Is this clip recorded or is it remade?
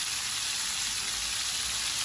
recorded